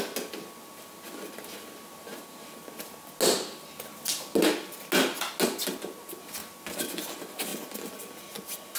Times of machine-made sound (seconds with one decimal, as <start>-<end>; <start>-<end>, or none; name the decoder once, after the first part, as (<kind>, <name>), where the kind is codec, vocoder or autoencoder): none